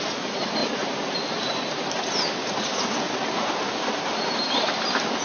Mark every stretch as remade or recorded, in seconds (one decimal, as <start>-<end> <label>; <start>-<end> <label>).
0.0-5.2 recorded